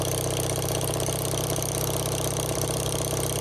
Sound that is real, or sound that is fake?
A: fake